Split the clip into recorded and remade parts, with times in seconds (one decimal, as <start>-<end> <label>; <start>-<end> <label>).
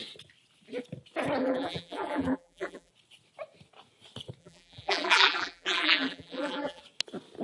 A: 0.0-1.4 recorded; 1.4-2.9 remade; 2.9-4.4 recorded; 4.4-6.8 remade; 6.8-7.4 recorded